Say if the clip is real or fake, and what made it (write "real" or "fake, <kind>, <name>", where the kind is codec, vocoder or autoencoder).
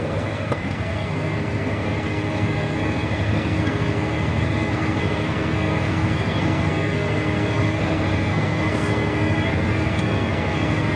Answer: fake, codec, SNAC